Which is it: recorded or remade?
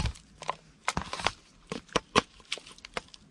recorded